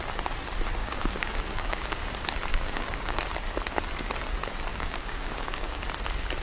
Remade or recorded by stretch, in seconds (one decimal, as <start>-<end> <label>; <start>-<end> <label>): 0.0-0.8 recorded; 0.8-2.0 remade; 2.0-2.5 recorded; 2.5-3.2 remade; 3.2-4.7 recorded; 4.7-5.8 remade; 5.8-6.4 recorded